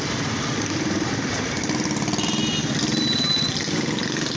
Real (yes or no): yes